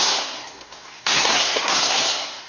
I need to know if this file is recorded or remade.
remade